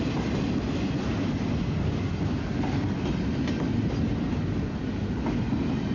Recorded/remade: recorded